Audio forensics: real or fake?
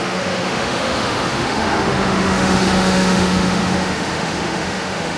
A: fake